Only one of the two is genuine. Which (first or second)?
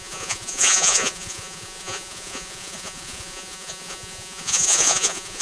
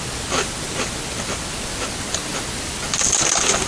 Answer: second